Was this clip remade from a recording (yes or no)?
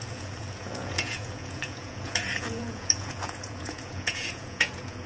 yes